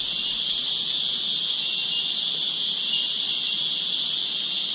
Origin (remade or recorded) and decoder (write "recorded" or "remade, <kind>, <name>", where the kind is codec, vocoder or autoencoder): recorded